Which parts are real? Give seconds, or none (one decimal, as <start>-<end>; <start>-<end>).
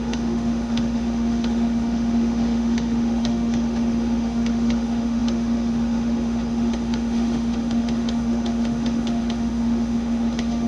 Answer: none